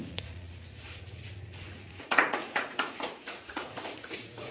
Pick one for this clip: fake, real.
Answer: fake